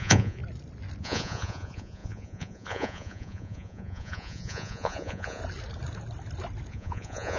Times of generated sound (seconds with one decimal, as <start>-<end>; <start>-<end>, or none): 0.0-0.4; 1.0-5.4; 6.7-7.4